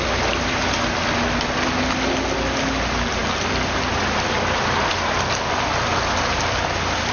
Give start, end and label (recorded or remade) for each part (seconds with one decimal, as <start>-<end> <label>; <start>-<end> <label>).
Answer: 0.0-7.1 recorded